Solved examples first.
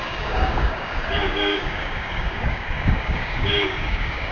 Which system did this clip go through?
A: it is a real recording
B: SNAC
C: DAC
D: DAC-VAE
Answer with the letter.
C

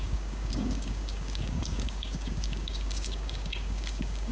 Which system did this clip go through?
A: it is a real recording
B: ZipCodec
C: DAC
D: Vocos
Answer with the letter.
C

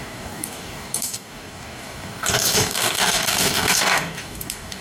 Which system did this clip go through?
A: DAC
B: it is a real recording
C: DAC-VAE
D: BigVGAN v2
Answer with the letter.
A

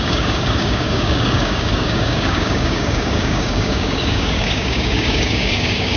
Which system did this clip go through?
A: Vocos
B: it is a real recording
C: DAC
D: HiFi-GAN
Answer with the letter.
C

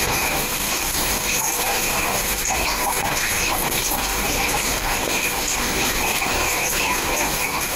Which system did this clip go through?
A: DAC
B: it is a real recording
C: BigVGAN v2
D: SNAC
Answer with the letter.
A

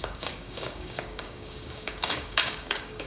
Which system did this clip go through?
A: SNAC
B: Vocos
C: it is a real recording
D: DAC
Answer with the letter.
D